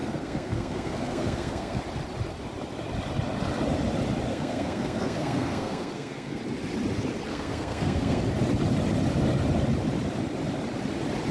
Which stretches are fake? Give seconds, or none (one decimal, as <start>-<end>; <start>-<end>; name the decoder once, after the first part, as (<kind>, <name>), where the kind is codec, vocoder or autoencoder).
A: 0.0-1.8 (codec, SNAC); 4.3-6.4; 7.3-8.2